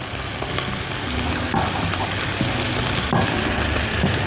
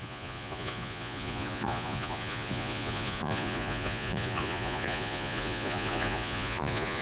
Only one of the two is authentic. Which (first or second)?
first